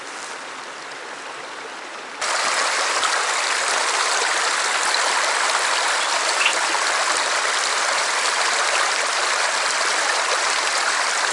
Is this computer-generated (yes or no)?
yes